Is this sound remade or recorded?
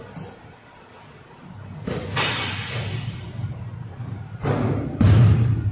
recorded